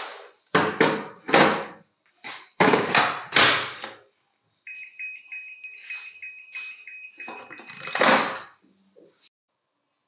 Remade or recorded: recorded